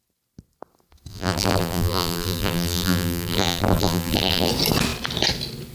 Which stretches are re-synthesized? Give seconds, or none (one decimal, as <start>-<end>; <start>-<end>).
1.1-4.5